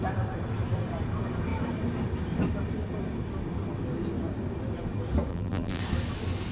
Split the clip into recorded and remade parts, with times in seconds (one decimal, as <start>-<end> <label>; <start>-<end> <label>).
0.0-5.3 recorded; 5.3-5.8 remade; 5.8-6.5 recorded